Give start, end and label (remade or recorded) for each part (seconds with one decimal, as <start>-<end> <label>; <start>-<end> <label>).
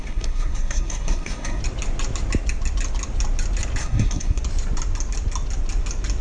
0.0-1.6 remade; 1.6-3.8 recorded; 3.8-4.4 remade; 4.4-6.2 recorded